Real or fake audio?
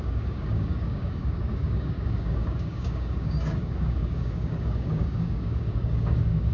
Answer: fake